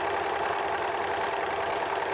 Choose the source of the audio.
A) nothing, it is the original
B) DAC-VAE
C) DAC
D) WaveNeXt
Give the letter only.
A